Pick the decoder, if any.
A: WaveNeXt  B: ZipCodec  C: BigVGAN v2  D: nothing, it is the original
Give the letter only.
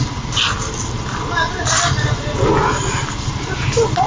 D